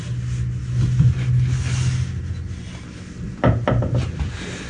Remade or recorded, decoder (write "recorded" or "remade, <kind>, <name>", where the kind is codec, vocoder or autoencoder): recorded